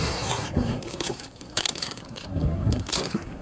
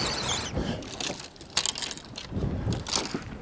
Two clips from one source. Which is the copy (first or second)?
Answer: first